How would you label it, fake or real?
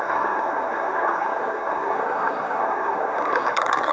fake